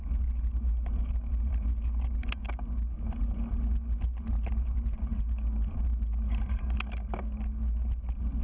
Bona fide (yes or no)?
yes